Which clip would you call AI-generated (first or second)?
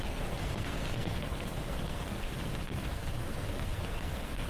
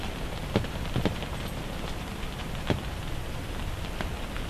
first